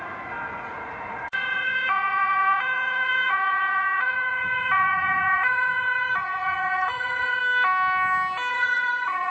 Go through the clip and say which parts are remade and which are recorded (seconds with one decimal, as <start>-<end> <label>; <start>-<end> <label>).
0.0-7.4 remade; 7.4-8.5 recorded; 8.5-9.3 remade